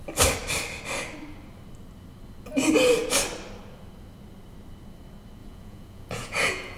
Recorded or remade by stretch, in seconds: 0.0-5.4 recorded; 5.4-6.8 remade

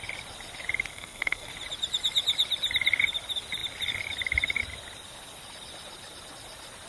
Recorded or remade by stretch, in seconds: 0.0-0.9 recorded; 0.9-1.5 remade; 1.5-6.9 recorded

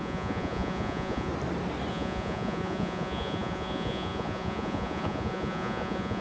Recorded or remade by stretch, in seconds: 0.0-1.3 remade; 1.3-1.9 recorded; 1.9-6.2 remade